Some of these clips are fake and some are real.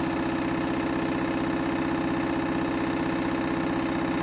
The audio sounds real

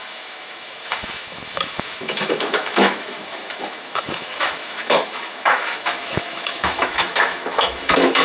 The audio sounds fake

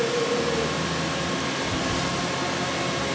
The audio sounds real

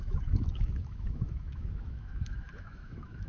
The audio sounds fake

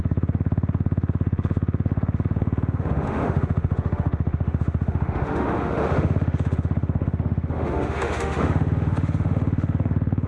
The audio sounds fake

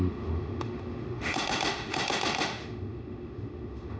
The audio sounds fake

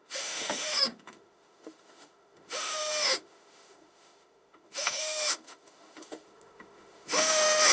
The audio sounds fake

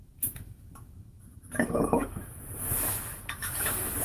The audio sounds fake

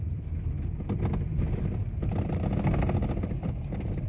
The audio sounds real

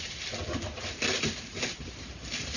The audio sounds real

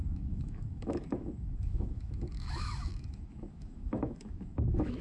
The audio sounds fake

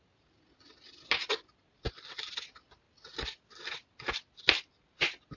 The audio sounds real